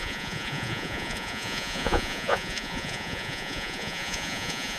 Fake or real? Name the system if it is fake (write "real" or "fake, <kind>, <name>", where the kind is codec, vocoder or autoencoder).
fake, vocoder, Vocos